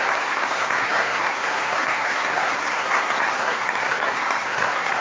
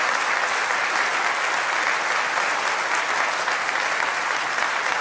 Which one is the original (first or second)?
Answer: second